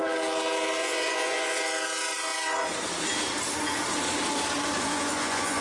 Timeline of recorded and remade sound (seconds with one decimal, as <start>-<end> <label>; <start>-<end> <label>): 0.0-0.8 recorded; 0.8-1.6 remade; 1.6-4.9 recorded; 4.9-5.6 remade